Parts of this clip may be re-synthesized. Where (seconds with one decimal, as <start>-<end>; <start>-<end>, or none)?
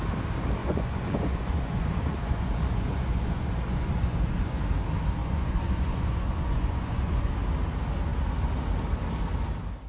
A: 0.6-4.6; 5.2-7.3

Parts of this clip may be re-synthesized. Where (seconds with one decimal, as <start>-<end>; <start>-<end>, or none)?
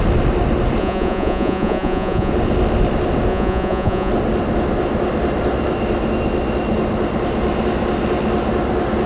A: 0.8-2.3; 3.3-4.1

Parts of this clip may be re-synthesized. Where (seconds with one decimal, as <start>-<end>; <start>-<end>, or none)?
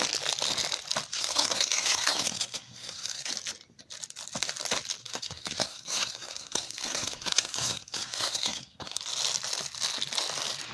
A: 1.1-3.3; 5.0-9.0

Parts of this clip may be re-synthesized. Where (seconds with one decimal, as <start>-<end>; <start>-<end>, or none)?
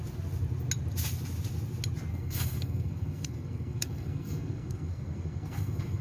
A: 2.1-6.0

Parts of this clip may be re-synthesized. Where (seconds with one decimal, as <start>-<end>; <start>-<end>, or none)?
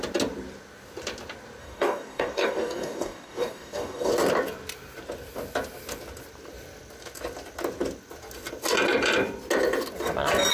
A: 1.6-4.1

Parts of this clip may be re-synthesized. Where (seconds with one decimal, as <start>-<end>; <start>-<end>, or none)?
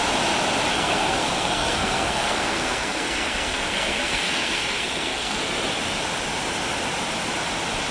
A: 0.7-5.4